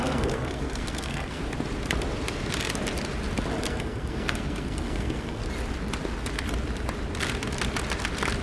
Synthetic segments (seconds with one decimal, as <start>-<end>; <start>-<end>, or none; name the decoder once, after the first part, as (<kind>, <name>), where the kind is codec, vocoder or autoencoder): 0.0-1.4 (codec, SNAC); 3.6-5.4